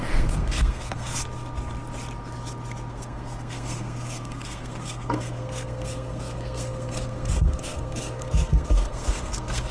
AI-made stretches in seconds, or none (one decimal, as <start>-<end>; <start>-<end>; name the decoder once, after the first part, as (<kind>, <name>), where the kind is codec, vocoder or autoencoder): 0.0-1.2 (codec, SNAC); 2.9-9.7